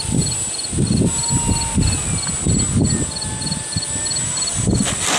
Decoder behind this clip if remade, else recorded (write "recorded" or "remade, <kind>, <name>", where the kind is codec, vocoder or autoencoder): recorded